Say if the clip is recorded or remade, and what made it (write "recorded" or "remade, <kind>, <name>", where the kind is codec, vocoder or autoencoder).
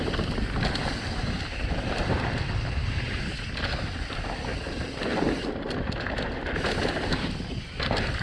recorded